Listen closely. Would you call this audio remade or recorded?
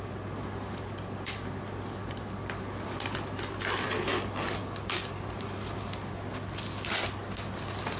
recorded